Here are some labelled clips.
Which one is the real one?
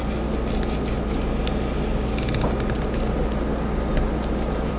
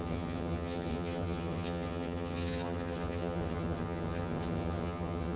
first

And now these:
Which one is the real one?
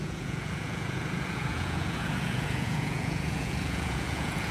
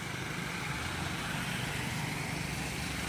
second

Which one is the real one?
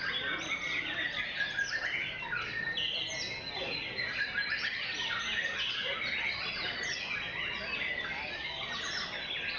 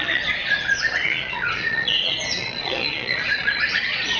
first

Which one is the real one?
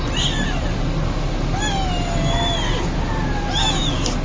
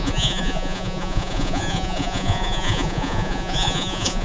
first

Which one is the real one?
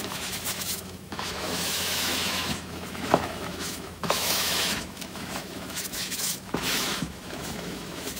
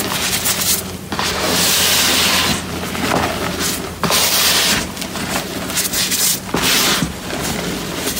second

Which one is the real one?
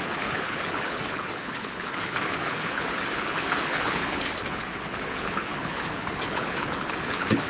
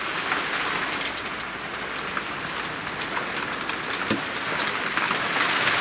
second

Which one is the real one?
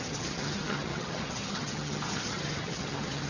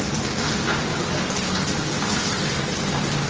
second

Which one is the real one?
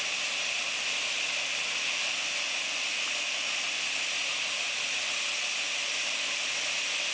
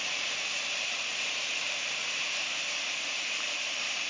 first